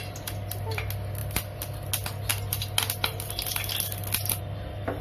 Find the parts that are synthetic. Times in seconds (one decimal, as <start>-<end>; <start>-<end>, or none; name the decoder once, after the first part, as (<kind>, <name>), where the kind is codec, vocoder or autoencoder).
none